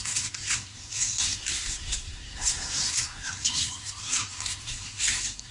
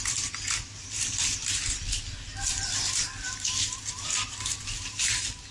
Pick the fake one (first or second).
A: first